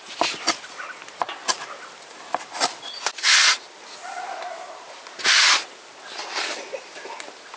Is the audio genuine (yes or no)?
yes